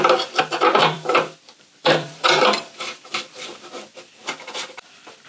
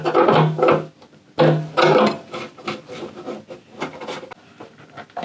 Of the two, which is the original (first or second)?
second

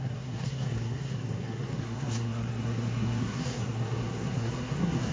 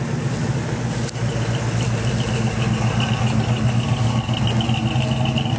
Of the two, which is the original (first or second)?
second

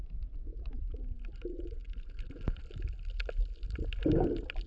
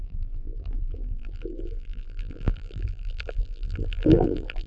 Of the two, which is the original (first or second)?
first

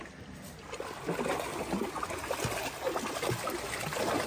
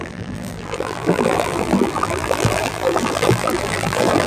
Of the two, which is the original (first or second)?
first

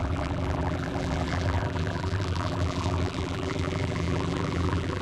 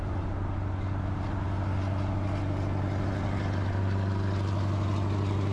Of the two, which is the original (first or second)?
second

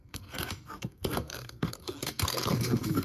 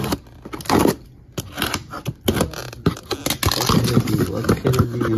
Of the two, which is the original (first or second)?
second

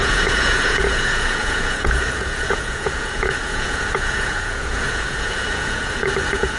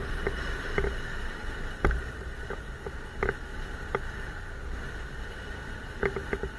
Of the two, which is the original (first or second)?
second